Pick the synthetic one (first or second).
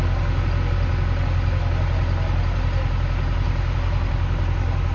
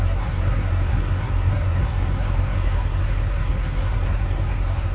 second